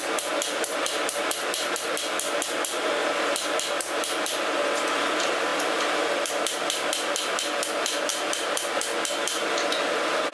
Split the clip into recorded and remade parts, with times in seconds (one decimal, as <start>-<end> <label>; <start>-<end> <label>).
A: 0.0-3.0 recorded; 3.0-3.8 remade; 3.8-5.5 recorded; 5.5-6.3 remade; 6.3-10.3 recorded